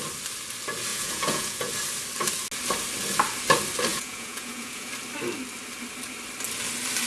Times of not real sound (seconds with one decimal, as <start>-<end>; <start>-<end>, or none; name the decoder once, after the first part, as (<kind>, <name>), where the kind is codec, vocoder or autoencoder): 0.9-1.7 (vocoder, Vocos); 3.9-4.9